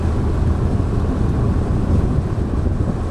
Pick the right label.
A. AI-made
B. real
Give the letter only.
B